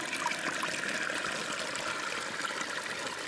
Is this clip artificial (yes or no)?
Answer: no